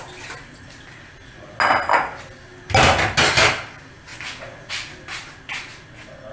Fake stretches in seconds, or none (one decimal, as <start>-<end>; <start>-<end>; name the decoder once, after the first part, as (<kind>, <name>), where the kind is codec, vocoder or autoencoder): none